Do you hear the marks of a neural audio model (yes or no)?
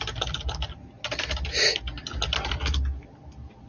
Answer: no